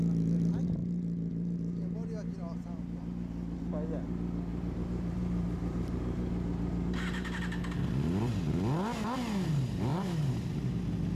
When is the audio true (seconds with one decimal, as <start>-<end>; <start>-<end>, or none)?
0.0-4.5; 7.4-9.9; 10.5-11.1